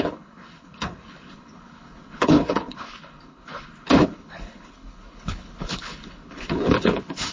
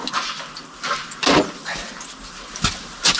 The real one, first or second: second